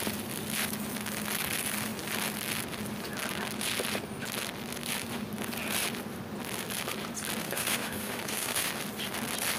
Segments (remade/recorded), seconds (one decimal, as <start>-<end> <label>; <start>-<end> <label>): 0.0-7.4 recorded; 7.4-8.7 remade; 8.7-9.6 recorded